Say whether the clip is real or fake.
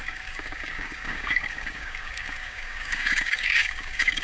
fake